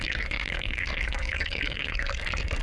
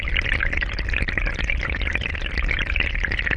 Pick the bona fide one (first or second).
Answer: second